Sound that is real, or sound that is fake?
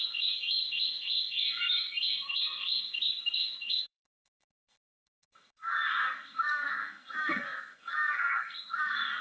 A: fake